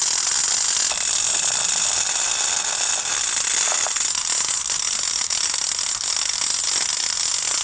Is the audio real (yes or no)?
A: yes